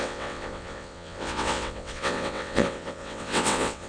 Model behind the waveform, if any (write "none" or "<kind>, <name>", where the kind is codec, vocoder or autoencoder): vocoder, WaveNeXt